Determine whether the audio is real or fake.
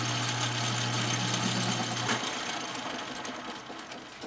real